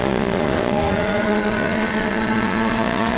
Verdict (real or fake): fake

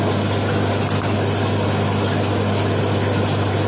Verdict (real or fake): real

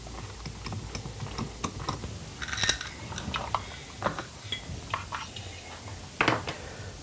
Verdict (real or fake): real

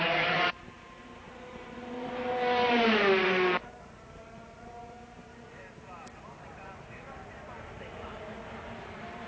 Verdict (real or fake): fake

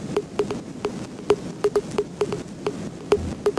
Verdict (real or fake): real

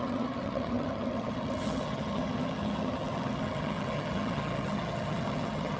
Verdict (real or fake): fake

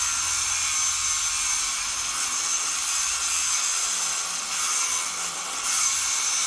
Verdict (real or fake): real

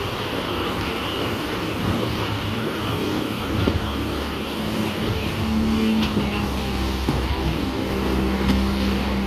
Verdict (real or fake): fake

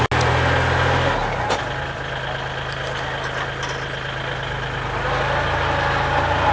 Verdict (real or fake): real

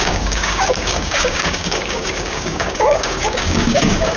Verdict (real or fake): fake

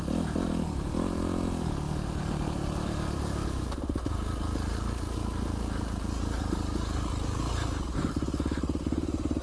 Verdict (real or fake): real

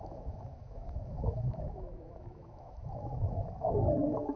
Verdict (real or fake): fake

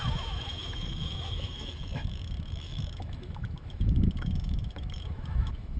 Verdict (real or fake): fake